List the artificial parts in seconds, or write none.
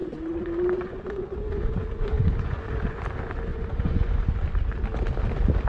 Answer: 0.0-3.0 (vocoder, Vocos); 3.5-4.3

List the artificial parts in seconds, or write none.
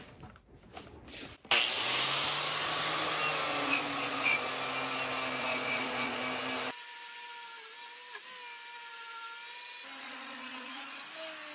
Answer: 3.5-4.5 (vocoder, Vocos); 5.4-6.2; 10.0-11.0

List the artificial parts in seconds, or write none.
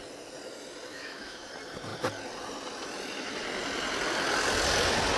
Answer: 0.9-1.5 (autoencoder, DAC-VAE)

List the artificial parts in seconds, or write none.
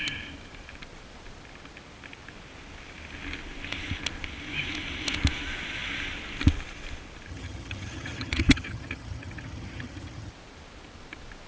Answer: 7.3-10.3 (vocoder, HiFi-GAN)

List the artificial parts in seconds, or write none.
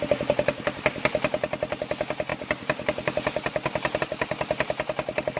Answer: none